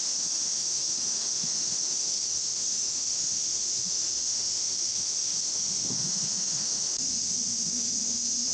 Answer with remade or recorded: remade